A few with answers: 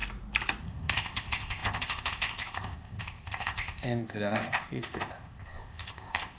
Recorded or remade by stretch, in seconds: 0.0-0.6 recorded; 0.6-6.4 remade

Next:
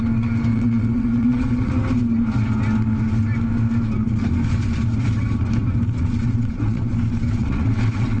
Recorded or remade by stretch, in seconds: 0.0-0.5 recorded; 0.5-1.7 remade; 1.7-6.2 recorded; 6.2-6.9 remade; 6.9-7.4 recorded; 7.4-8.2 remade

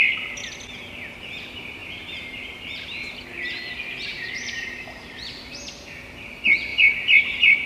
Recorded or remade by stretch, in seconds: 0.0-1.8 recorded; 1.8-6.1 remade; 6.1-6.7 recorded; 6.7-7.7 remade

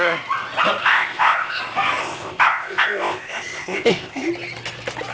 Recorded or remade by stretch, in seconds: 0.0-0.8 recorded; 0.8-1.6 remade; 1.6-2.0 recorded; 2.0-4.3 remade; 4.3-5.1 recorded

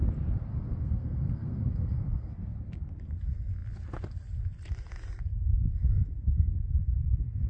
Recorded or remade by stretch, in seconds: 0.0-0.5 recorded; 0.5-2.3 remade; 2.3-7.5 recorded